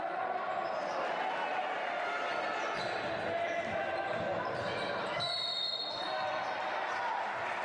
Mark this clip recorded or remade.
recorded